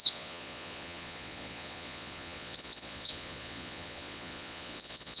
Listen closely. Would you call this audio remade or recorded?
remade